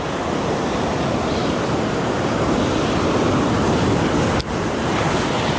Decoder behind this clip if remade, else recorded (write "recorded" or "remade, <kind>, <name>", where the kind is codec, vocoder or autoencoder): recorded